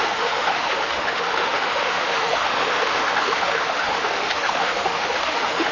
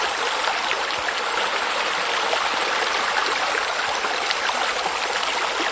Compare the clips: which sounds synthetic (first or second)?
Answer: first